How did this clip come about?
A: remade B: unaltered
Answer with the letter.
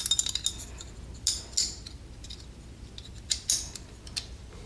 B